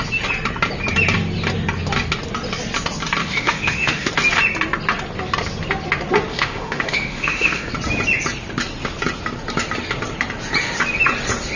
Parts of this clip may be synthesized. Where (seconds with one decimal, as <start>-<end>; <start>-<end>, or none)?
3.2-4.1; 6.3-7.7